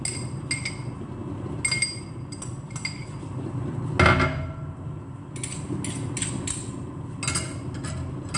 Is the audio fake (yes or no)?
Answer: no